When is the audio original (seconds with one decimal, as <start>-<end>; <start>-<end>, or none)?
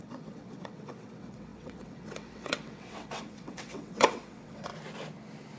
4.7-5.6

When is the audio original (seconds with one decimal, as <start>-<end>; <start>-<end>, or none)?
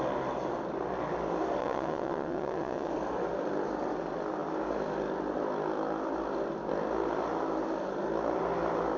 0.0-1.6; 2.9-9.0